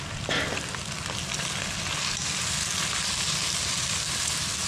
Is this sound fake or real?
real